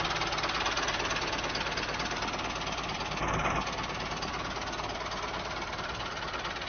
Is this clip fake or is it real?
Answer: real